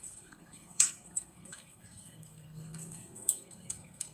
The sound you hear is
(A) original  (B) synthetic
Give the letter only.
B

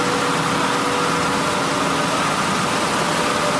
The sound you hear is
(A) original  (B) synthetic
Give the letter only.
A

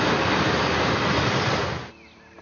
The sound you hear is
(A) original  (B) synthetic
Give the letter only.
A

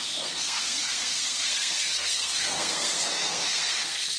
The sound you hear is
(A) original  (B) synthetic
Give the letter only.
B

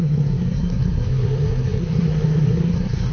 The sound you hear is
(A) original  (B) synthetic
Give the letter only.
B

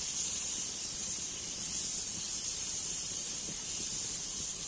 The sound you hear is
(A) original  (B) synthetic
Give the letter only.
A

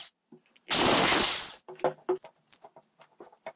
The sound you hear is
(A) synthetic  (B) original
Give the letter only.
B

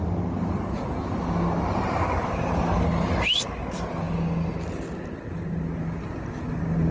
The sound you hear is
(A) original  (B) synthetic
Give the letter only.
A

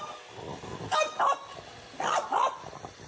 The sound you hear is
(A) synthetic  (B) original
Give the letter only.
B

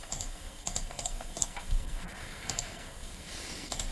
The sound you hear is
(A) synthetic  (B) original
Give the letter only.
A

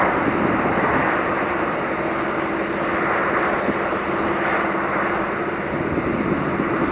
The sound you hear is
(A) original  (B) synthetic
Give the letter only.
A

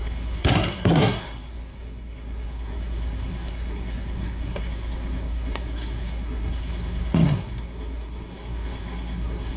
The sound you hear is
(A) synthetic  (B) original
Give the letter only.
A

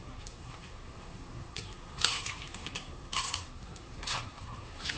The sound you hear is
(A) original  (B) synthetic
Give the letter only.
B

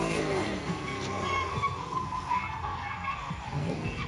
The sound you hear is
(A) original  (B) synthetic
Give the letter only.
B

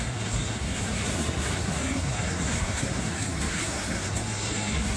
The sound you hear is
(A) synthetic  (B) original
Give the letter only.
A